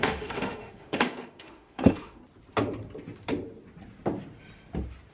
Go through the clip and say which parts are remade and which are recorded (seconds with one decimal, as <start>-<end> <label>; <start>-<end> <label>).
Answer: 0.0-2.2 remade; 2.2-5.1 recorded